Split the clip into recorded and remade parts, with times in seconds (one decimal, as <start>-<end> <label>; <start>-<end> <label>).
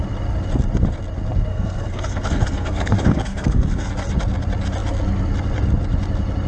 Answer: 0.0-1.5 recorded; 1.5-3.9 remade; 3.9-6.5 recorded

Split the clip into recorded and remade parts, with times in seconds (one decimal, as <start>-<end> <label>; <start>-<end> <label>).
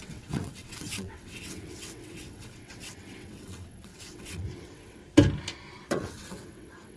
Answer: 0.0-5.0 remade; 5.0-5.9 recorded; 5.9-7.0 remade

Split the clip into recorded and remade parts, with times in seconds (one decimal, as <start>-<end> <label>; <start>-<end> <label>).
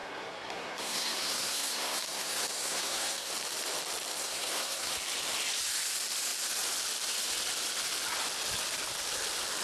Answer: 0.0-3.3 remade; 3.3-4.2 recorded; 4.2-4.9 remade; 4.9-9.6 recorded